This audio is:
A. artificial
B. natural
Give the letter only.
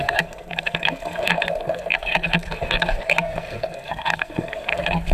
A